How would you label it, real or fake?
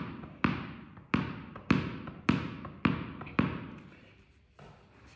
real